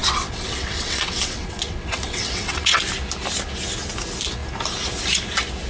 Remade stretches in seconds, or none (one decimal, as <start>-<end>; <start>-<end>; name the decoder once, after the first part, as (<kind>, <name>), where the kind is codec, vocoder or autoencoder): 0.0-2.8 (vocoder, WaveNeXt)